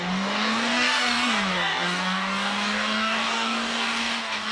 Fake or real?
fake